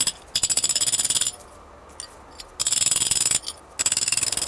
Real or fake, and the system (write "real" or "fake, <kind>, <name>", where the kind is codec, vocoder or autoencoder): real